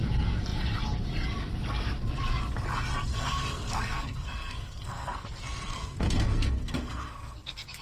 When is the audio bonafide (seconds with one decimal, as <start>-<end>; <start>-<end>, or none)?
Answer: 0.0-3.1